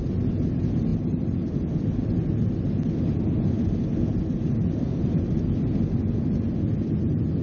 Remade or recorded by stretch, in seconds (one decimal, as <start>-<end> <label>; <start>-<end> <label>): 0.0-0.9 recorded; 0.9-2.9 remade; 2.9-7.4 recorded